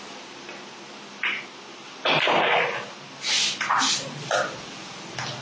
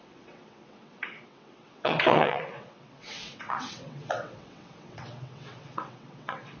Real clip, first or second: first